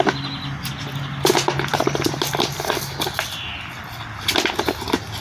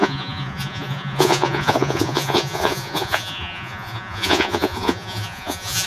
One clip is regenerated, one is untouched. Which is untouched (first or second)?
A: first